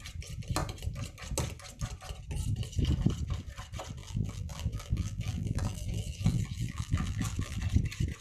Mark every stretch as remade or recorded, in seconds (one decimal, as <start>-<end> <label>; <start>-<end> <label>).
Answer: 0.0-4.0 recorded; 4.0-7.6 remade; 7.6-8.2 recorded